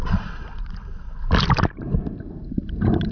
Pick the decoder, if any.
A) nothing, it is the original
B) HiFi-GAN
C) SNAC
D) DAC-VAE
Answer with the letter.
A